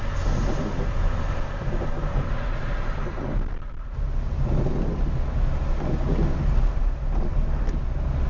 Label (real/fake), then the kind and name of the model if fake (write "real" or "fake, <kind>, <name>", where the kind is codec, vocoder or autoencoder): real